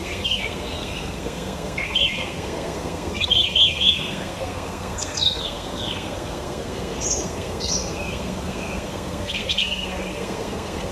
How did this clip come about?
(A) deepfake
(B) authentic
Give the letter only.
A